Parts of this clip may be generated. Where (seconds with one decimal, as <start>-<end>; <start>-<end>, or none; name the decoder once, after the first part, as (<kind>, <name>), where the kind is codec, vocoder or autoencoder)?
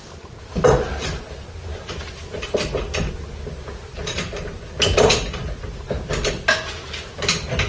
0.0-1.2 (vocoder, BigVGAN v2); 1.7-2.4